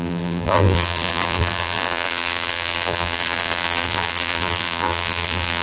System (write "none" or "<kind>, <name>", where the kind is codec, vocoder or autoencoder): vocoder, BigVGAN v2